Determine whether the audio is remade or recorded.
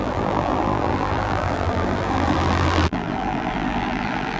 remade